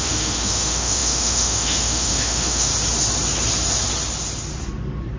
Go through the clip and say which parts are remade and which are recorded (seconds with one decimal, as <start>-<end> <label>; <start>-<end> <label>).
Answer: 0.0-2.7 remade; 2.7-5.2 recorded

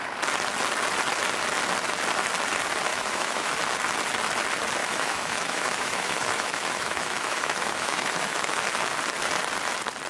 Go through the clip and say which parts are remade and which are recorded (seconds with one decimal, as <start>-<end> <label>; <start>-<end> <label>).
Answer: 0.0-2.9 recorded; 2.9-3.5 remade; 3.5-4.8 recorded; 4.8-8.9 remade; 8.9-10.1 recorded

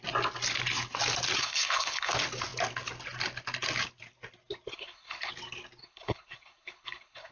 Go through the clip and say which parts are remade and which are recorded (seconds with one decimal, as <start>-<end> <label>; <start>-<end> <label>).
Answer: 0.0-1.4 recorded; 1.4-2.1 remade; 2.1-4.7 recorded; 4.7-5.3 remade; 5.3-5.8 recorded; 5.8-7.3 remade

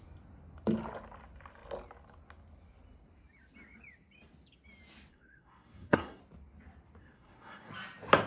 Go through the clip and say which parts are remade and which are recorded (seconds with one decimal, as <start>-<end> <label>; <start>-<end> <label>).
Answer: 0.0-5.1 recorded; 5.1-6.2 remade; 6.2-7.0 recorded; 7.0-7.7 remade; 7.7-8.3 recorded

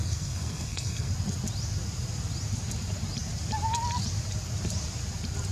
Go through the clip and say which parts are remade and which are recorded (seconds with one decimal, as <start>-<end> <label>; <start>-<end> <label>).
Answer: 0.0-1.1 remade; 1.1-5.5 recorded

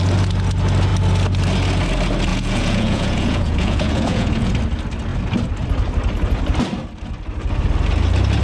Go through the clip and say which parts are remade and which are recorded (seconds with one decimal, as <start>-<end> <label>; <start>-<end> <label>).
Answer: 0.0-2.3 recorded; 2.3-4.5 remade; 4.5-8.4 recorded